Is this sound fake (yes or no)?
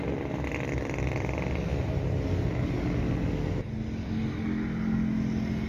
no